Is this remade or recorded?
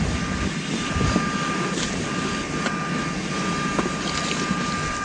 recorded